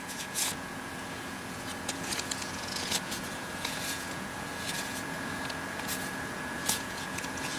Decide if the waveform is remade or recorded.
remade